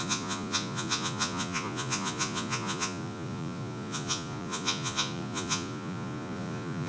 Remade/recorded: remade